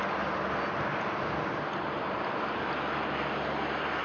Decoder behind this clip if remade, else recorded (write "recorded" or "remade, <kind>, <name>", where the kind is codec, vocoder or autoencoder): recorded